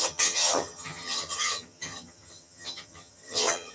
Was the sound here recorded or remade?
remade